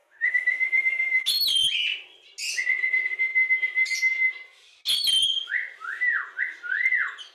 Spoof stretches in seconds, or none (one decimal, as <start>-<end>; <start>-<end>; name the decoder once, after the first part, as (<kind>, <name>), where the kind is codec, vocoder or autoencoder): 0.0-1.3 (autoencoder, DAC-VAE)